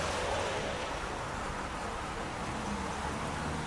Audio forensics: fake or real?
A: real